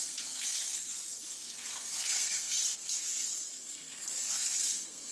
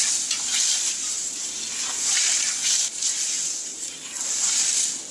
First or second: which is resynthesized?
first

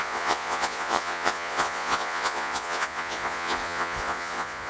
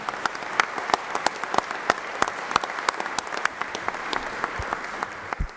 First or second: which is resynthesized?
first